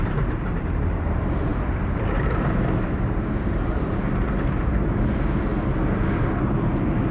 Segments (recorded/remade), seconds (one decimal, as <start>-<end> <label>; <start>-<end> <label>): 0.0-5.5 remade; 5.5-6.4 recorded; 6.4-7.1 remade

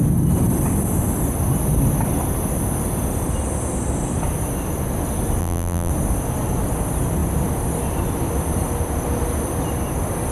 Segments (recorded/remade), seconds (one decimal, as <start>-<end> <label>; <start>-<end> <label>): 0.0-5.4 recorded; 5.4-5.9 remade; 5.9-10.3 recorded

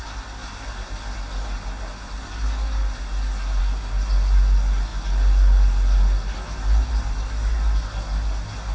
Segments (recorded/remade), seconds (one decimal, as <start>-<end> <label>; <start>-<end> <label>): 0.0-8.7 recorded